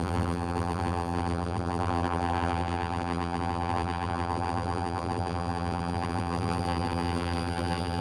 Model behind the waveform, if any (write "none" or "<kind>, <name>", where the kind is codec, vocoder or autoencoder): vocoder, BigVGAN v2